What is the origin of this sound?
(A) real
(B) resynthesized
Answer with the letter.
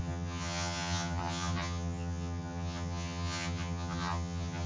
B